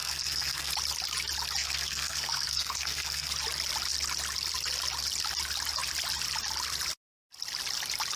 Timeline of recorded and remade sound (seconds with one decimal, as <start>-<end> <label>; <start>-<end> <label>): 0.0-0.7 remade; 0.7-1.6 recorded; 1.6-3.3 remade; 3.3-8.2 recorded